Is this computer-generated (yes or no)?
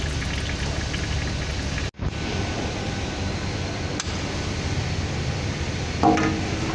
no